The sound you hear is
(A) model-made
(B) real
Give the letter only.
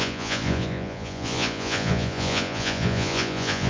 A